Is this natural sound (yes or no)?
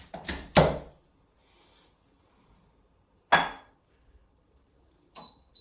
yes